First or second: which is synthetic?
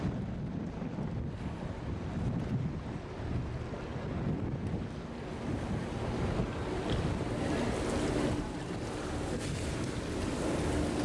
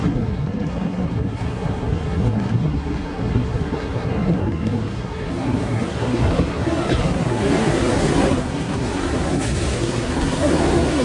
second